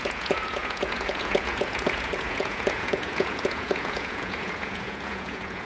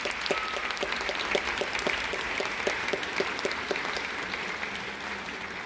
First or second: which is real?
second